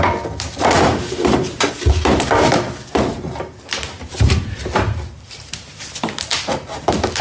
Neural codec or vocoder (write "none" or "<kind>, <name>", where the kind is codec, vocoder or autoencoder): vocoder, BigVGAN v2